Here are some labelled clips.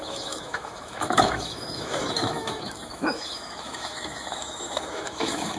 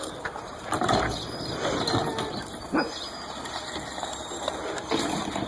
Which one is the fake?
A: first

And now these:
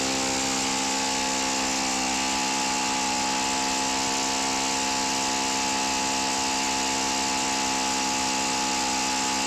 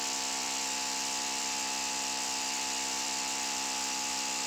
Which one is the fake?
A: second